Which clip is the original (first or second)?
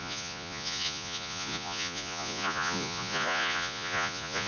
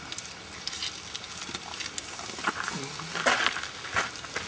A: second